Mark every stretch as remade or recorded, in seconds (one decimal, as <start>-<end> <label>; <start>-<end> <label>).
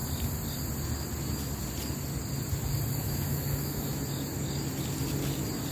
0.0-3.0 recorded; 3.0-4.0 remade; 4.0-5.7 recorded